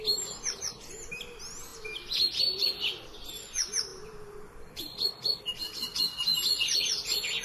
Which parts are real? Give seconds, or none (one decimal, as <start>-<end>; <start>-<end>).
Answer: 0.0-7.4